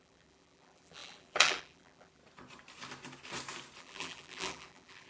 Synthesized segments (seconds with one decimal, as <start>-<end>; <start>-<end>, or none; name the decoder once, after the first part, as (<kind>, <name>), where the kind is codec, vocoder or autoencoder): 0.0-2.2 (vocoder, BigVGAN v2); 3.8-5.1